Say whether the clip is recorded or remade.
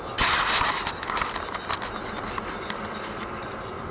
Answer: recorded